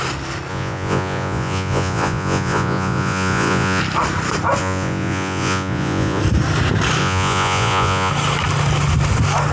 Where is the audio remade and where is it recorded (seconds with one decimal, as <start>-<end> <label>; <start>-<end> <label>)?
0.0-0.5 recorded; 0.5-3.8 remade; 3.8-4.6 recorded; 4.6-6.2 remade; 6.2-7.0 recorded; 7.0-8.1 remade; 8.1-9.5 recorded